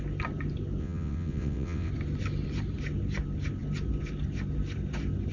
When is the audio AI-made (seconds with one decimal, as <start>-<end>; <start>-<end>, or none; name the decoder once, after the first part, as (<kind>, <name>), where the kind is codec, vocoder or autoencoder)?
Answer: 0.8-1.9 (vocoder, WaveNeXt)